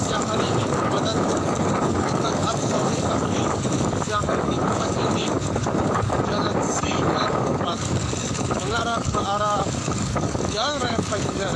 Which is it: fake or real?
fake